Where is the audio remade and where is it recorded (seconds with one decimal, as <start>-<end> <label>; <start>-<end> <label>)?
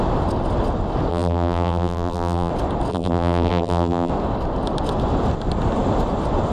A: 0.0-1.1 recorded; 1.1-2.5 remade; 2.5-2.9 recorded; 2.9-4.1 remade; 4.1-6.5 recorded